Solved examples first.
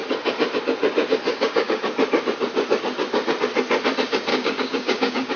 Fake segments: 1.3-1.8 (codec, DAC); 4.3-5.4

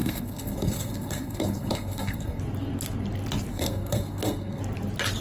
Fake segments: 0.0-2.4 (codec, SNAC); 3.5-4.6

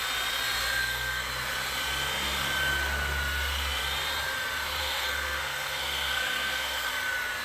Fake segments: 0.8-1.3 (codec, SNAC); 4.8-6.9

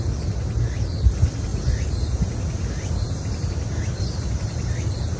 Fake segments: none

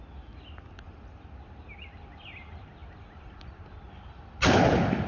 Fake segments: none

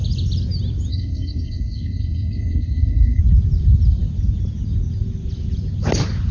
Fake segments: 0.9-3.2 (codec, SNAC)

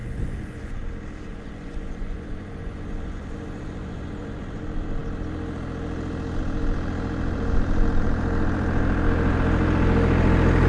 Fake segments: 0.0-0.8 (vocoder, Vocos); 1.3-4.6

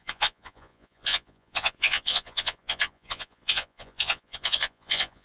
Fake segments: 0.0-5.2 (vocoder, Vocos)